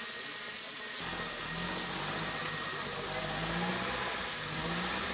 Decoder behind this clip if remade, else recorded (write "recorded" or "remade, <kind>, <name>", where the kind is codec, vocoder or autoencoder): recorded